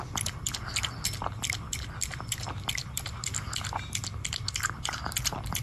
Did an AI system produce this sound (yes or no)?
no